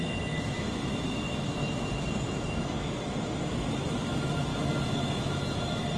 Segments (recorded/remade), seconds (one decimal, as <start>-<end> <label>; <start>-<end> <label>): 0.0-4.5 remade; 4.5-5.2 recorded; 5.2-6.0 remade

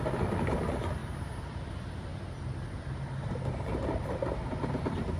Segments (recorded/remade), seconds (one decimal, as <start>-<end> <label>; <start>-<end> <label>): 0.0-1.0 recorded; 1.0-1.7 remade; 1.7-2.1 recorded; 2.1-5.2 remade

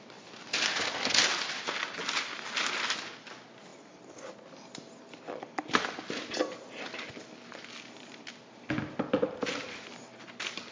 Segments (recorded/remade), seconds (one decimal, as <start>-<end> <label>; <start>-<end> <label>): 0.0-10.7 recorded

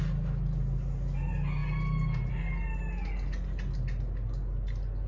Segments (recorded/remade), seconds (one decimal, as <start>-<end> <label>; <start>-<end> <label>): 0.0-5.1 recorded

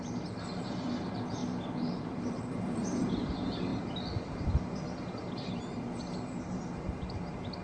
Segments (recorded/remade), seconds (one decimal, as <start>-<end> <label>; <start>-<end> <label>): 0.0-7.6 recorded

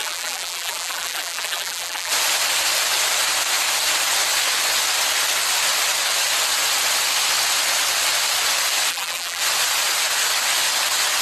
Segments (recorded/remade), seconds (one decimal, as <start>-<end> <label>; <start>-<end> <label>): 0.0-2.1 remade; 2.1-8.9 recorded; 8.9-9.4 remade; 9.4-11.2 recorded

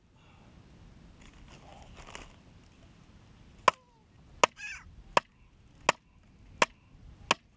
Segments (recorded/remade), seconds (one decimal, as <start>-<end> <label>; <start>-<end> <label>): 0.0-7.6 recorded

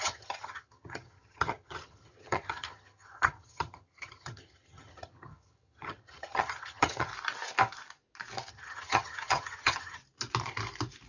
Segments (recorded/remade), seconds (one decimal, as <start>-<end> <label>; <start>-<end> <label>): 0.0-7.1 remade; 7.1-8.5 recorded; 8.5-10.0 remade; 10.0-11.1 recorded